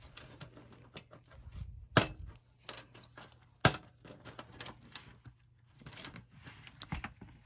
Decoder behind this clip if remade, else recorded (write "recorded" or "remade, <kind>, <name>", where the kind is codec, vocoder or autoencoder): recorded